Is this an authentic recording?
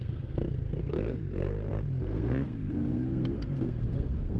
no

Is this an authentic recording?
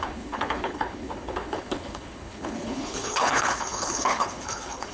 no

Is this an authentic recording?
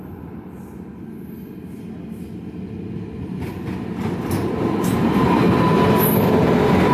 yes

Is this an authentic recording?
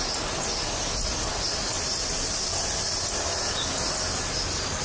yes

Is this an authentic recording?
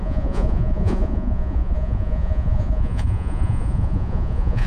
no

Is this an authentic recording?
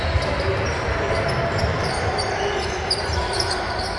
yes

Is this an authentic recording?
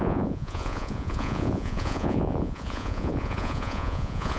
no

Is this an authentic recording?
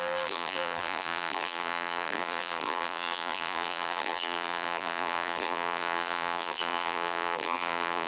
no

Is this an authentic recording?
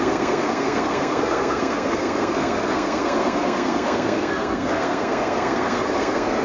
no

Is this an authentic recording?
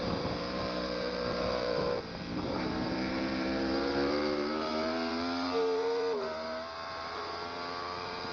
no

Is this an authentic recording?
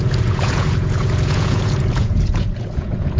no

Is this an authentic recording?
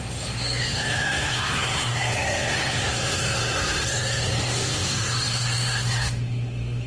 no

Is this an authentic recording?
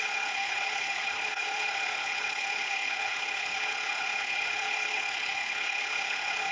no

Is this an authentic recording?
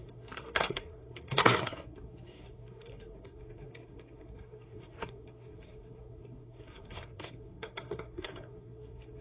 no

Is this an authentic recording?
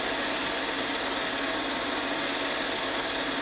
yes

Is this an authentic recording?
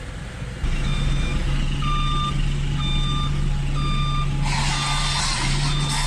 yes